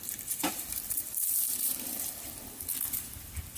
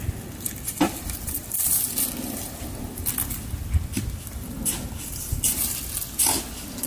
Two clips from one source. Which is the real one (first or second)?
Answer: second